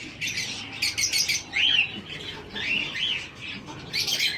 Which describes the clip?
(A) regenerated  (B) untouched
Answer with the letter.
B